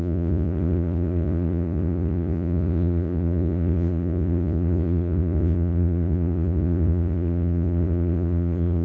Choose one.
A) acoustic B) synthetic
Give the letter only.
B